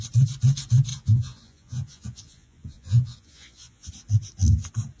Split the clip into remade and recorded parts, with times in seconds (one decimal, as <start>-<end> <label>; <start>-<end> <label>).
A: 0.0-0.9 recorded; 0.9-3.9 remade; 3.9-5.0 recorded